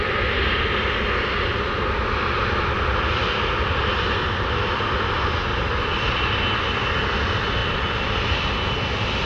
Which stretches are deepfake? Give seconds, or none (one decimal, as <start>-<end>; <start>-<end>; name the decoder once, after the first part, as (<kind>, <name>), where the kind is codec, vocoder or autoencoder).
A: none